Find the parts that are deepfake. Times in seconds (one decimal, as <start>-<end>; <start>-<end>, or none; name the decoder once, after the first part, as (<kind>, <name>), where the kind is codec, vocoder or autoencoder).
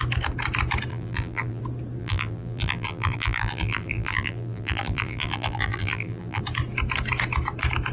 0.9-1.6 (vocoder, BigVGAN v2); 2.0-6.4